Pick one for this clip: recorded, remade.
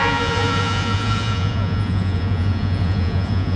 remade